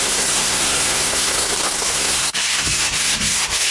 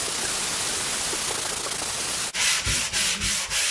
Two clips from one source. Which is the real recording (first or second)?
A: second